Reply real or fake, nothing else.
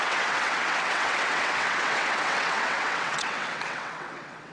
fake